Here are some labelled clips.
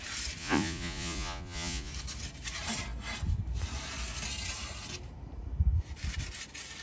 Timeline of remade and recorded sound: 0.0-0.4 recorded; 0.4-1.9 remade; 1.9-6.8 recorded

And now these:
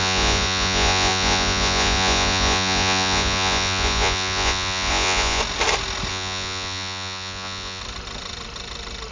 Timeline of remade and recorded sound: 0.0-5.4 remade; 5.4-6.1 recorded; 6.1-7.8 remade; 7.8-9.1 recorded

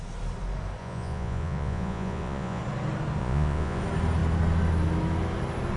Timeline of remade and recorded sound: 0.0-0.8 recorded; 0.8-2.6 remade; 2.6-3.2 recorded; 3.2-3.8 remade; 3.8-5.8 recorded

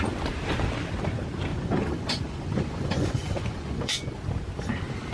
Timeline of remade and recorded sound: 0.0-1.5 recorded; 1.5-4.1 remade; 4.1-5.1 recorded

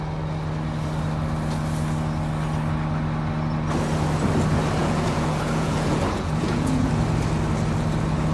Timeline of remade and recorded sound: 0.0-4.8 recorded; 4.8-6.9 remade; 6.9-8.3 recorded

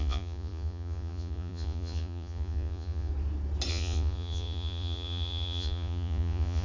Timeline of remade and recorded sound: 0.0-3.1 remade; 3.1-3.7 recorded; 3.7-6.6 remade

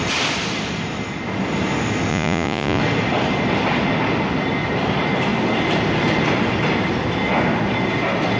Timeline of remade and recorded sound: 0.0-2.1 recorded; 2.1-2.8 remade; 2.8-8.4 recorded